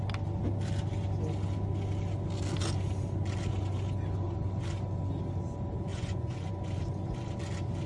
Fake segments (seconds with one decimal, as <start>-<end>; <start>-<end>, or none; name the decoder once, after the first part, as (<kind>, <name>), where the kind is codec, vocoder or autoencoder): 5.9-6.5 (vocoder, Vocos)